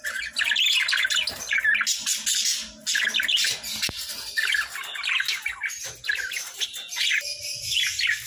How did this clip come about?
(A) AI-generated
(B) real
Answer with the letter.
B